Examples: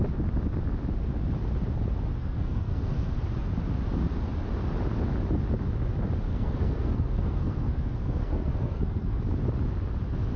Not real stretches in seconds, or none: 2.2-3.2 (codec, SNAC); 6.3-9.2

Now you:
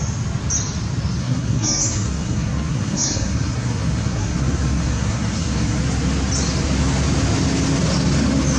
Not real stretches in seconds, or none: 1.2-5.8 (codec, SNAC)

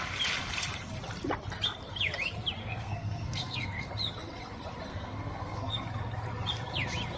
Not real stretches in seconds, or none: 2.6-3.9 (codec, SNAC); 4.9-5.7

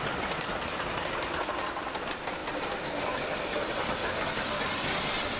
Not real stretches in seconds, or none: none

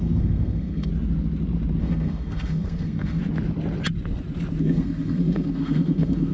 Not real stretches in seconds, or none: 0.0-0.9 (codec, SNAC); 1.8-3.2; 4.6-6.3

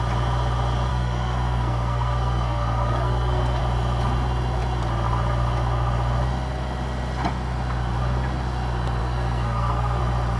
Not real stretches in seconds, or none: 0.9-3.6 (codec, SNAC); 9.0-10.0